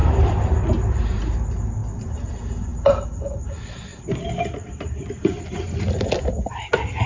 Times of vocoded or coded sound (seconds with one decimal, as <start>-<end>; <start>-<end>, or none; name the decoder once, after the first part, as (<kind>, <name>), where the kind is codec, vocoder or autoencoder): 0.0-1.2 (vocoder, BigVGAN v2); 2.7-3.5; 3.9-5.8